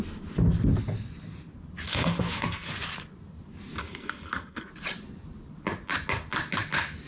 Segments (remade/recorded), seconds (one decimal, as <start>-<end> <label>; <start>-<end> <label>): 0.0-1.9 recorded; 1.9-2.7 remade; 2.7-3.8 recorded; 3.8-4.7 remade; 4.7-7.1 recorded